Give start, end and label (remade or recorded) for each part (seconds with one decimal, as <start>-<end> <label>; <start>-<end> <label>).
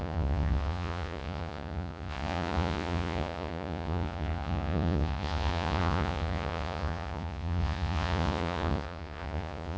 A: 0.0-9.8 remade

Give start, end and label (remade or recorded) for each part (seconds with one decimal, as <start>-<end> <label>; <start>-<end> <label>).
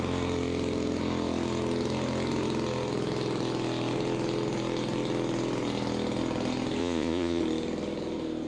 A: 0.0-6.8 recorded; 6.8-7.4 remade; 7.4-8.5 recorded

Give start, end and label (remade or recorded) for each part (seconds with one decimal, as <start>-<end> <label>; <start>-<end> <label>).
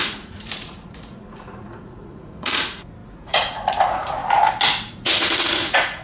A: 0.0-4.2 remade; 4.2-4.9 recorded; 4.9-6.0 remade